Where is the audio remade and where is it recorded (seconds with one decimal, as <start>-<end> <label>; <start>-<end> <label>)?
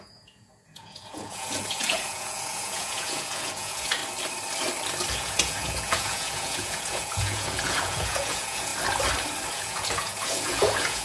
0.0-4.0 remade; 4.0-5.1 recorded; 5.1-8.7 remade; 8.7-9.5 recorded; 9.5-11.0 remade